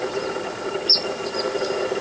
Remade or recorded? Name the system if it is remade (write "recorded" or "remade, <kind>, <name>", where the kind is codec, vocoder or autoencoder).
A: remade, vocoder, BigVGAN v2